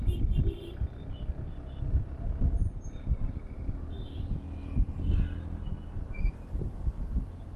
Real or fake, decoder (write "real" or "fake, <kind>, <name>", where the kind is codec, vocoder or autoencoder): real